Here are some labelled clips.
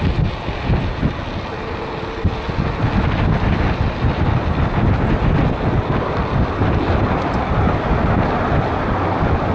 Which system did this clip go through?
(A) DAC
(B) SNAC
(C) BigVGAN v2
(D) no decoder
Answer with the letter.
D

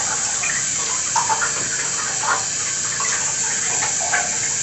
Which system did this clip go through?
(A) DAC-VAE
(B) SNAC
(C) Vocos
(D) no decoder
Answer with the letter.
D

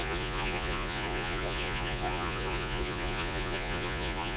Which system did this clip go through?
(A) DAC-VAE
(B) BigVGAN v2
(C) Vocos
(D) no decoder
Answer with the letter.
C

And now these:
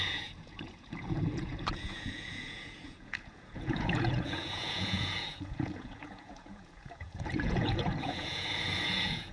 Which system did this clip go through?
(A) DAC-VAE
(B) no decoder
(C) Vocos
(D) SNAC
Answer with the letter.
C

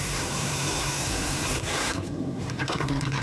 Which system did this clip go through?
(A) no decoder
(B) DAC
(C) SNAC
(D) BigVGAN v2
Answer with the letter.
C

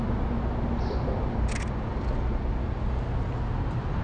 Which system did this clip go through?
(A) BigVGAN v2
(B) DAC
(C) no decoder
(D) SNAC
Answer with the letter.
C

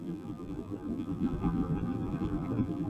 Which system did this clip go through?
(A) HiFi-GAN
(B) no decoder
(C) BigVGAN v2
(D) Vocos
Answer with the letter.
C